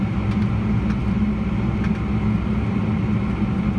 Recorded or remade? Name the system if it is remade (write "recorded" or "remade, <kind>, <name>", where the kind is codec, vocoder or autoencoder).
recorded